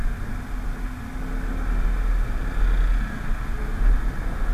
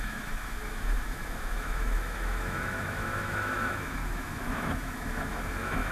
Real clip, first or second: first